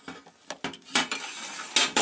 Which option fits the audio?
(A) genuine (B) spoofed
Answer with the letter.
A